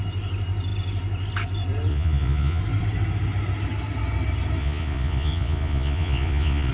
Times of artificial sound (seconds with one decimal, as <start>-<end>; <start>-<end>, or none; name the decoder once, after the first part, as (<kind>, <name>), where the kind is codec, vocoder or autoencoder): 1.9-2.6 (vocoder, Vocos); 4.6-6.7